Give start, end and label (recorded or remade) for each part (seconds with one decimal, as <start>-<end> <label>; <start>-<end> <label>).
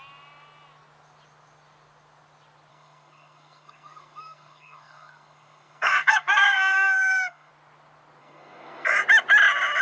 0.0-2.7 recorded; 2.7-7.5 remade; 7.5-8.2 recorded; 8.2-8.9 remade; 8.9-9.8 recorded